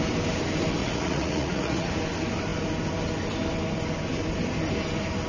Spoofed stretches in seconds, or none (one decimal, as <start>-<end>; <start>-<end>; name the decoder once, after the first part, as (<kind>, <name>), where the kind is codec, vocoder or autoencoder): 0.8-1.9 (vocoder, Vocos)